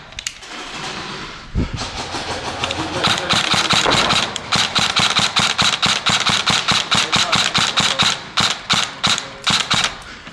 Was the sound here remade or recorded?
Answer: recorded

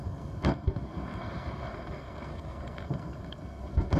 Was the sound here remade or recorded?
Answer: remade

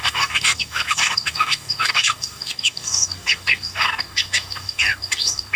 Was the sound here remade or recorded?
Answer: remade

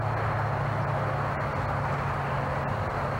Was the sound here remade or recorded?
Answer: recorded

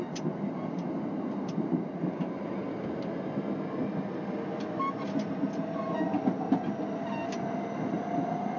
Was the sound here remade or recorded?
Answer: recorded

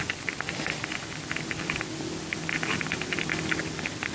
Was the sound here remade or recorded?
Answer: recorded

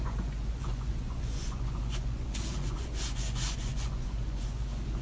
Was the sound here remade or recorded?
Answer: remade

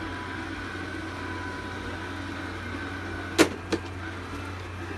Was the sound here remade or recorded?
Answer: recorded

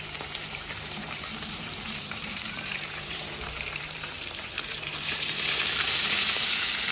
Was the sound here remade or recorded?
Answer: remade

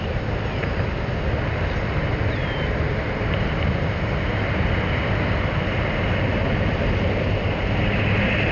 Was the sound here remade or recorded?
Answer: recorded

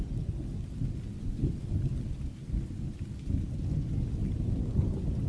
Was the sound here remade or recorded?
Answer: recorded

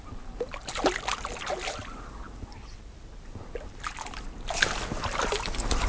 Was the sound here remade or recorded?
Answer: recorded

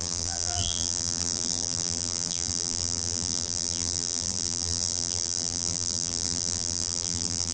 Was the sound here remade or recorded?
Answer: remade